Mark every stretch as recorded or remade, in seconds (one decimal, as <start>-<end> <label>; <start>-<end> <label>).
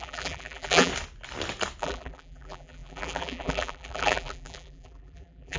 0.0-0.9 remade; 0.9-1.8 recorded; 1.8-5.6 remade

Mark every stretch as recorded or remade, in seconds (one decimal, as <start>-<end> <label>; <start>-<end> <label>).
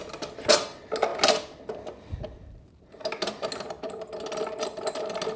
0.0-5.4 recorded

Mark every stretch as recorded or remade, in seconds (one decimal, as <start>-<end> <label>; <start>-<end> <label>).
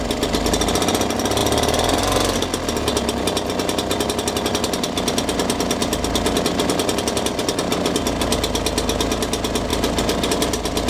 0.0-1.4 recorded; 1.4-2.0 remade; 2.0-9.7 recorded; 9.7-10.3 remade; 10.3-10.9 recorded